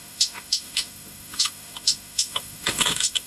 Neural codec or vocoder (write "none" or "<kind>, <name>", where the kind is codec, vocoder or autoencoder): autoencoder, DAC-VAE